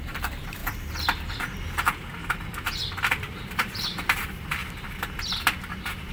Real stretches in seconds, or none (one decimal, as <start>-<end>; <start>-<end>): 0.6-1.3; 2.2-3.3; 4.6-5.6